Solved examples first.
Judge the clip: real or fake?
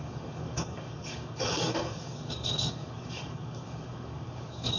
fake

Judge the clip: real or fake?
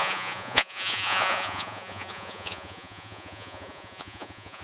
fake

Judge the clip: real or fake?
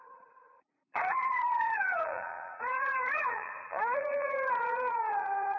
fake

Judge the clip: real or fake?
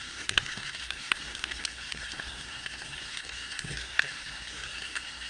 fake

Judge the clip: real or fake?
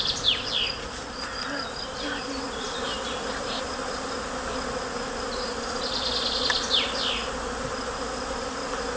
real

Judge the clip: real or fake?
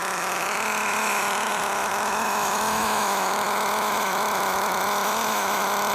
fake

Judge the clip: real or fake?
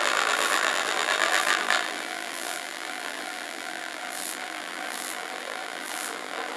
fake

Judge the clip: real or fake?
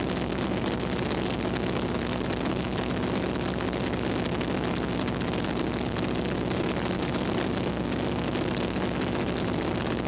real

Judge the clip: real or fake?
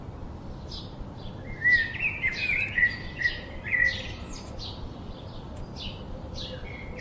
real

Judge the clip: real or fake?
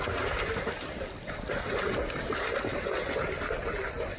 real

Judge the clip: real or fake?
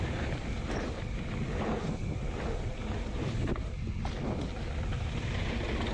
real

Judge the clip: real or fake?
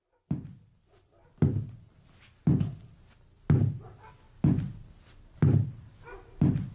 real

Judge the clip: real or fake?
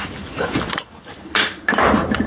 real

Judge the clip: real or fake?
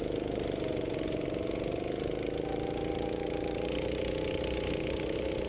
real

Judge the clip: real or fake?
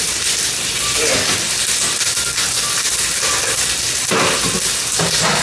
real